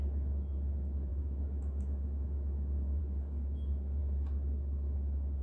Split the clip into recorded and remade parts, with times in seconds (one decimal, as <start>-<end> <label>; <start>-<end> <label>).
0.0-1.1 recorded; 1.1-3.0 remade; 3.0-5.4 recorded